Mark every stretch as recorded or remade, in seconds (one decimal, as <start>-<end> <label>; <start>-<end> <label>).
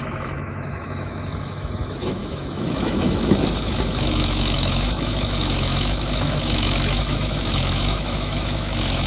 0.0-9.1 remade